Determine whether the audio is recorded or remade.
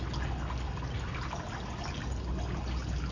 recorded